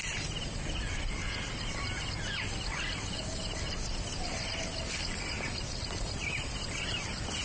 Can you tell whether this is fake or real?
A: real